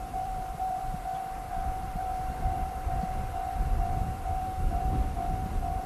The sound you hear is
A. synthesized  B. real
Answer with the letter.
A